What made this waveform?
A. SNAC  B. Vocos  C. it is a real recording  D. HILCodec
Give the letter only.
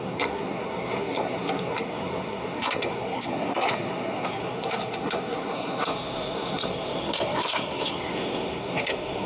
A